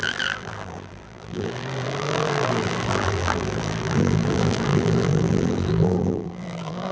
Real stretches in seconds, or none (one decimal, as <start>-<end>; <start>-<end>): none